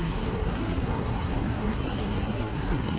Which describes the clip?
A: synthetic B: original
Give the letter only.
A